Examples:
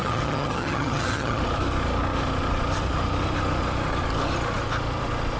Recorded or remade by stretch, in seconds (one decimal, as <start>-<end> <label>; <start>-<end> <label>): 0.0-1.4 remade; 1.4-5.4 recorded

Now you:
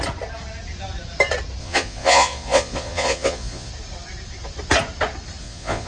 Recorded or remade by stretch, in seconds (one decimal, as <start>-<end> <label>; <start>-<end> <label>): 0.0-1.6 recorded; 1.6-3.7 remade; 3.7-5.4 recorded; 5.4-5.9 remade

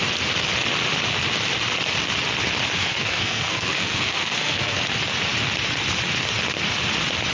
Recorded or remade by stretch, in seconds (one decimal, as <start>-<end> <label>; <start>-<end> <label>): 0.0-2.8 recorded; 2.8-4.8 remade; 4.8-7.3 recorded